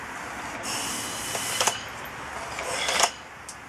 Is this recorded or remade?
recorded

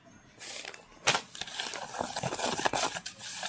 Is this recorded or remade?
recorded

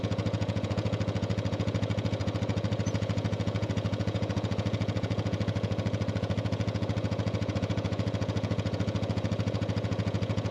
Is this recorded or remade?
remade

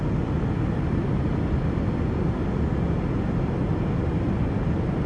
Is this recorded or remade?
recorded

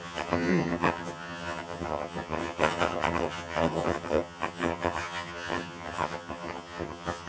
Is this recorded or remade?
remade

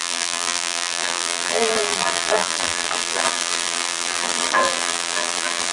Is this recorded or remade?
remade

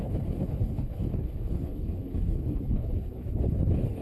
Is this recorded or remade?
remade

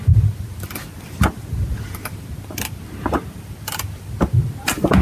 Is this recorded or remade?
recorded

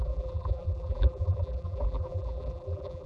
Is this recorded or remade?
remade